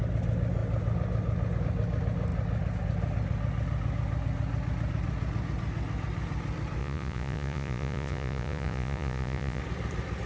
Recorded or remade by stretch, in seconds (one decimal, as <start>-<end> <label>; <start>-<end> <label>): 0.0-6.8 recorded; 6.8-9.6 remade; 9.6-10.3 recorded